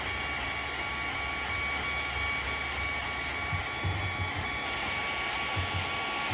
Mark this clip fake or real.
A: real